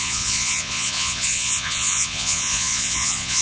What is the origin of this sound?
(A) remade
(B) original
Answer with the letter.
A